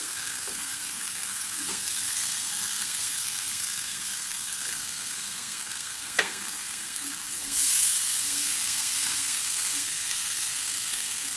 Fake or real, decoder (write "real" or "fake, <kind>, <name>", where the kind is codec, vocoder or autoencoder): fake, codec, SNAC